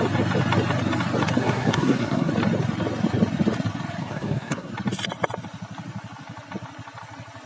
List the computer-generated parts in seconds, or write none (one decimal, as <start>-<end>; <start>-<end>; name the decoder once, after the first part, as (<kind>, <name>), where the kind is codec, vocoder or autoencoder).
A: 1.4-2.3 (codec, SNAC); 4.0-4.7